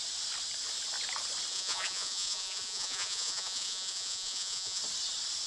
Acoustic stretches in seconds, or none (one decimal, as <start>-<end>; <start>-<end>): 0.0-1.5; 4.8-5.5